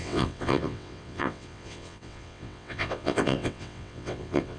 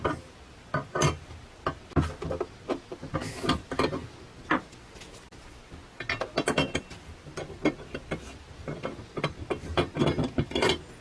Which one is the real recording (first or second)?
second